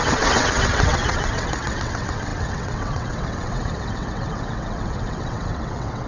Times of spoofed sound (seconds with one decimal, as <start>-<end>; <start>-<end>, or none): 0.0-6.1